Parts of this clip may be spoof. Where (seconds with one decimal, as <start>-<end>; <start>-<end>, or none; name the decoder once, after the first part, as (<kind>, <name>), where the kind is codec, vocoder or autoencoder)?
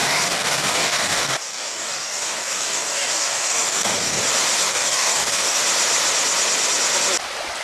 0.0-4.2 (codec, DAC); 4.7-5.6